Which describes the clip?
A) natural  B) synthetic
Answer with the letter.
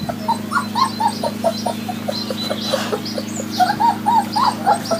A